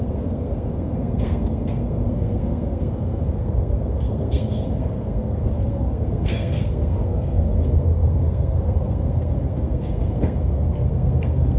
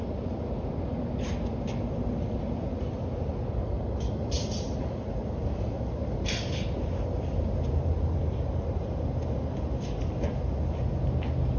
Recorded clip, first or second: second